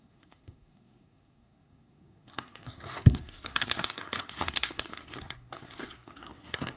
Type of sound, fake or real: fake